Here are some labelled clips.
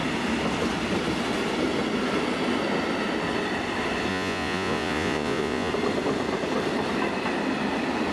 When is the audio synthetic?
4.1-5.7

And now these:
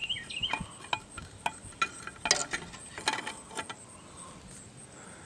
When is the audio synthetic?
none

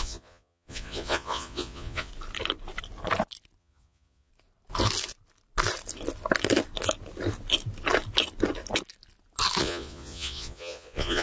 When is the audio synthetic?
0.0-2.1; 3.6-4.3; 9.6-11.2

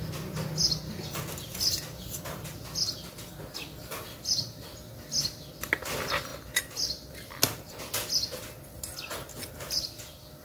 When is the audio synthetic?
none

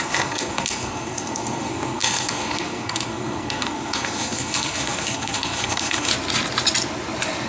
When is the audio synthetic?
0.0-6.1

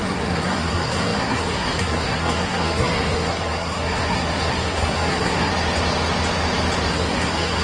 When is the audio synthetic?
0.0-5.5; 6.9-7.6